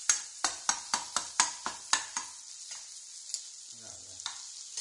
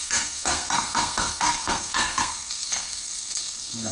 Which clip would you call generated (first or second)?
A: second